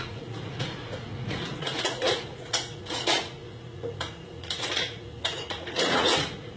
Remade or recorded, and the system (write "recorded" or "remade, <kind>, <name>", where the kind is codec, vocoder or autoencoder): remade, vocoder, Vocos